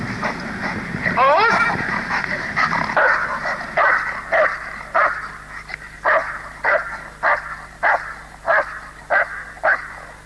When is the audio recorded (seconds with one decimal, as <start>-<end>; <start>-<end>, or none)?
0.0-10.3